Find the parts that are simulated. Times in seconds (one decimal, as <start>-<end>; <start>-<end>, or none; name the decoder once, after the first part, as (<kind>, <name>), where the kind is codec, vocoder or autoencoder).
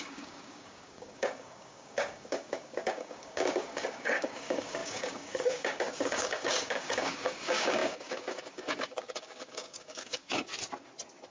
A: 0.0-10.5 (codec, DAC)